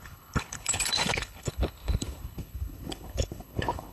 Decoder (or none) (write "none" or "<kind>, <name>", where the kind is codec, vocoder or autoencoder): codec, HILCodec